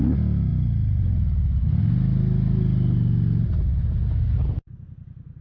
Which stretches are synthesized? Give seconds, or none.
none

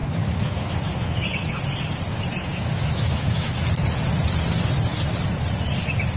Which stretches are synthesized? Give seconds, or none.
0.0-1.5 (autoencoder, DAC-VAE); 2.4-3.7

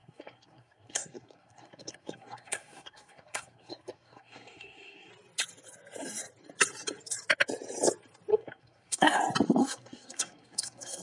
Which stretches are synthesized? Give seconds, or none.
0.0-5.1 (codec, SNAC); 8.3-9.2; 9.6-11.0

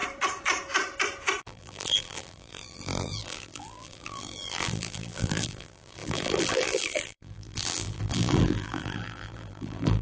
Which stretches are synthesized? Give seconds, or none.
1.4-10.0 (vocoder, BigVGAN v2)